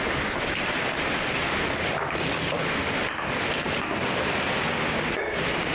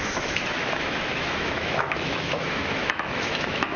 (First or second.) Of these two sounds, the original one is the first